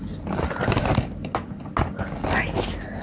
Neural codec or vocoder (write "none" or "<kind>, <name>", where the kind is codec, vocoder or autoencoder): none